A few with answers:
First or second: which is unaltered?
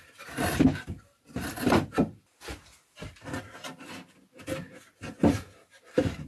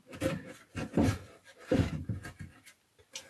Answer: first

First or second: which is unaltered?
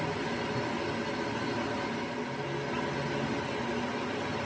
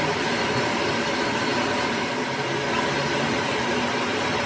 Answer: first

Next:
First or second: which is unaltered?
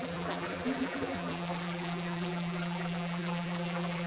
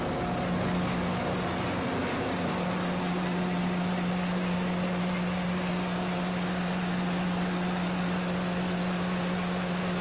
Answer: second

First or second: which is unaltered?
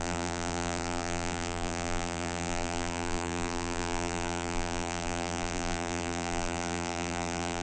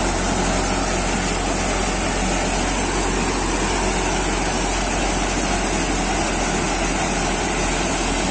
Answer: second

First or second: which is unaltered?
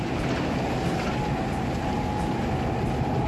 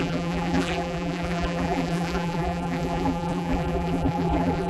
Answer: first